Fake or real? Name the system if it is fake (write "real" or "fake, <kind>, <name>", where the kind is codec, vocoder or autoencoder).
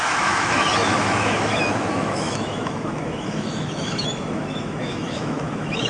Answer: fake, autoencoder, DAC-VAE